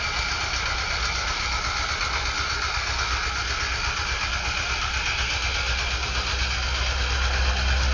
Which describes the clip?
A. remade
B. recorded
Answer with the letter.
B